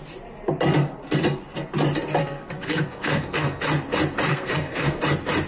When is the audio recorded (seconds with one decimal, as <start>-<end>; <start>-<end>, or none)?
0.0-2.2; 3.6-4.3; 5.0-5.5